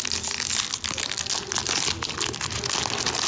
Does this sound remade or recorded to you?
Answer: recorded